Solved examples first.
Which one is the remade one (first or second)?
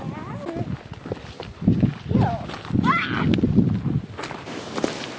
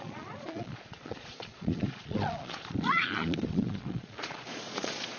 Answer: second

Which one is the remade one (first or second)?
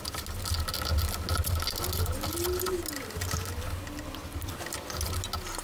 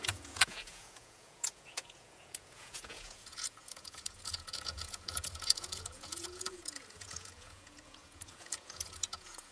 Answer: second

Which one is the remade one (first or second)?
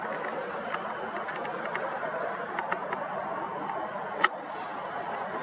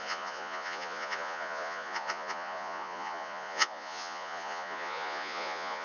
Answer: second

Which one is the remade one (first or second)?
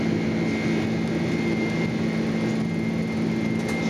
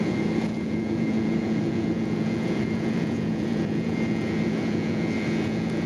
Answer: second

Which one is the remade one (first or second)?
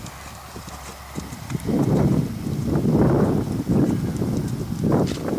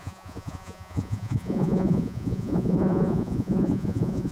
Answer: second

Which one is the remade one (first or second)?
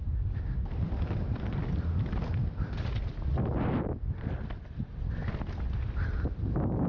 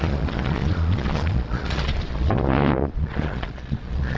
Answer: second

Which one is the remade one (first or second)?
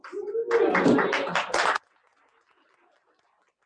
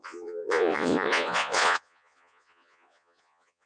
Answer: second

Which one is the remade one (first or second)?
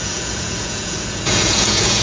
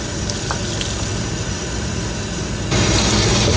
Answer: first